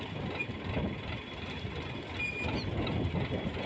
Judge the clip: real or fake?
real